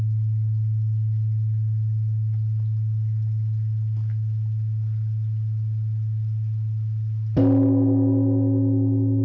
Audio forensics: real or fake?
real